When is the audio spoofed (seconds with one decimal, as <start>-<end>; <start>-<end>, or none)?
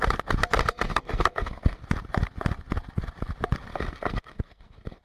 0.6-1.8; 3.7-5.0